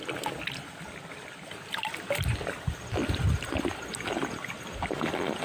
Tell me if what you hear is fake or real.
real